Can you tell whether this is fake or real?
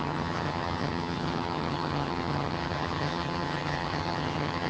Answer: fake